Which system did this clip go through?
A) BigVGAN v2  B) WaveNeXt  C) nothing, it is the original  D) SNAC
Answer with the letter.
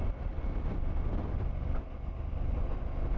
C